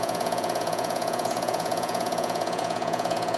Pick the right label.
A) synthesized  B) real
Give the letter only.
A